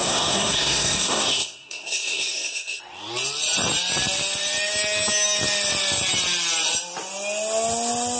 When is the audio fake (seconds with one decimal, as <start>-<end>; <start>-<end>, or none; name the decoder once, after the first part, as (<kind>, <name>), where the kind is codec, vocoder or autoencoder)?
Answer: 0.0-2.8 (codec, SNAC)